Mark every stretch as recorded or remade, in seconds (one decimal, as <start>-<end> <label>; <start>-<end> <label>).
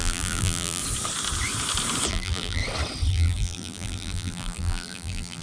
0.0-0.8 remade; 0.8-2.1 recorded; 2.1-2.6 remade; 2.6-3.1 recorded; 3.1-5.4 remade